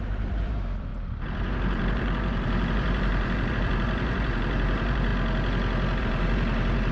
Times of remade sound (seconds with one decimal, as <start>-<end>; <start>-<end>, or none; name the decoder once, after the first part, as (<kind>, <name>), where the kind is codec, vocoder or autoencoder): 0.0-5.1 (vocoder, BigVGAN v2); 6.0-6.9